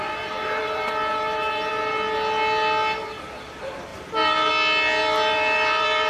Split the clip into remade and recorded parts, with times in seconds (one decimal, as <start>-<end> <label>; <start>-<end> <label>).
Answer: 0.0-0.6 recorded; 0.6-1.9 remade; 1.9-3.9 recorded; 3.9-4.5 remade; 4.5-5.0 recorded; 5.0-6.1 remade